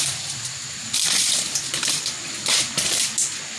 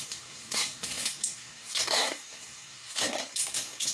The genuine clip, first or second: first